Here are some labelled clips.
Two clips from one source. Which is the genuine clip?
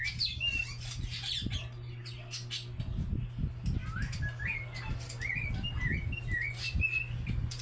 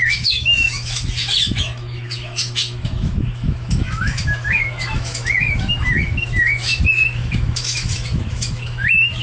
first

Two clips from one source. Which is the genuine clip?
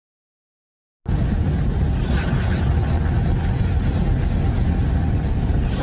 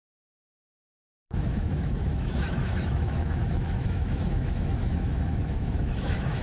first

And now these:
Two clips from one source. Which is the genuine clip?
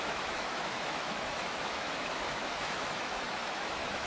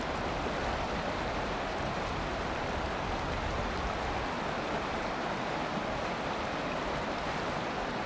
second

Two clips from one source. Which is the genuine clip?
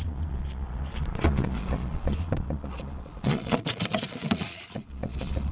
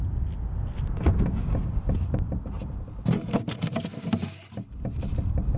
second